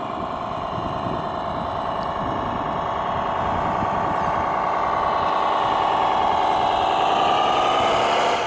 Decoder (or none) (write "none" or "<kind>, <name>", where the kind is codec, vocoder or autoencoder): none